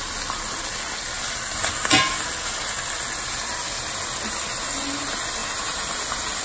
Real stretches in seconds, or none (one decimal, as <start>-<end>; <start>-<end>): 0.0-5.4